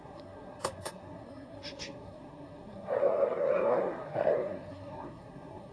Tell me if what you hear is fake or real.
fake